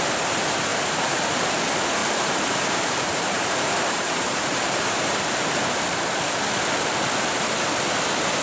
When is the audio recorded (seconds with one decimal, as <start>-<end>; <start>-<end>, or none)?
0.0-0.7; 1.4-2.0; 5.3-8.4